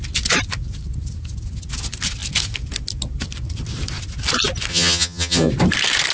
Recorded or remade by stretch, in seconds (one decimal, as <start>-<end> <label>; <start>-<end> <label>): 0.0-4.7 recorded; 4.7-5.5 remade; 5.5-6.1 recorded